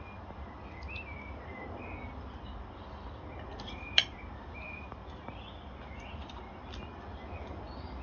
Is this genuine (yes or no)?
yes